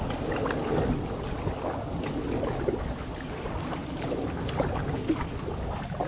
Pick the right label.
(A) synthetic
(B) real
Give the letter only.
B